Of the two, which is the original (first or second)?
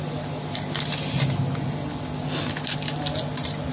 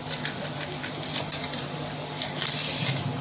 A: first